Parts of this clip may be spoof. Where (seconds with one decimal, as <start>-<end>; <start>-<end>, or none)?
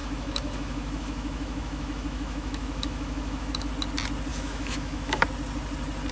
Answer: 0.0-3.7; 4.3-5.2